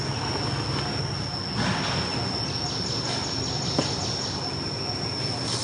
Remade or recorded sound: recorded